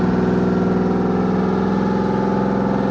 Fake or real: real